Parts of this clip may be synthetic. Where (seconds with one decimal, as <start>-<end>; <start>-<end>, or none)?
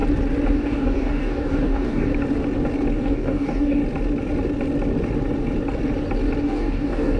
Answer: 0.5-2.1; 3.0-3.8; 6.4-7.2